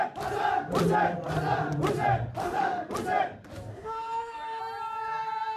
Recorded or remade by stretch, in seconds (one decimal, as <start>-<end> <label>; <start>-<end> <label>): 0.0-2.4 recorded; 2.4-2.9 remade; 2.9-3.7 recorded; 3.7-4.6 remade; 4.6-5.6 recorded